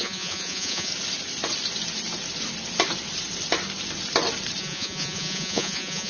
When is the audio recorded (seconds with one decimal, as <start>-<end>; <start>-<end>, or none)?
0.9-4.6